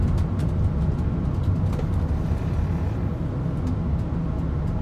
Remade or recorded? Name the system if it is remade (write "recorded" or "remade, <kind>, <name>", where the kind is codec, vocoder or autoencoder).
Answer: recorded